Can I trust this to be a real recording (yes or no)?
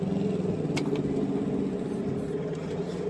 yes